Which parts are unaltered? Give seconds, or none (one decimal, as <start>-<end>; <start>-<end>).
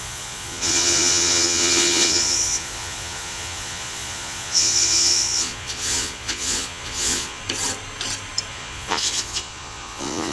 7.4-8.5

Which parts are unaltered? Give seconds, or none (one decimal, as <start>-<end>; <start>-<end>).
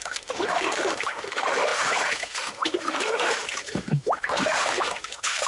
none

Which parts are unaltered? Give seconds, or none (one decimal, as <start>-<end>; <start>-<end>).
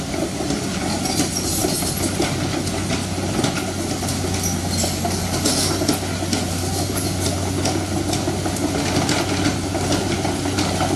0.0-11.0